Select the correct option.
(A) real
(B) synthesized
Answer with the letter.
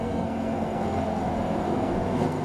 B